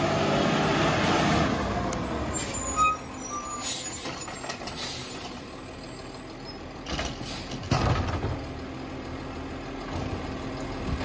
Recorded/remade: recorded